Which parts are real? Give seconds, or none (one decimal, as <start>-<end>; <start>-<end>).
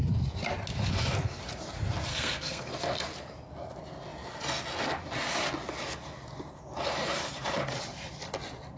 0.0-2.1; 2.7-8.8